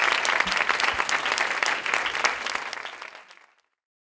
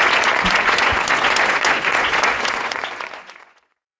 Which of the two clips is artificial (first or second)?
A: second